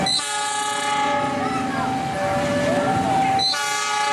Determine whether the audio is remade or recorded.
recorded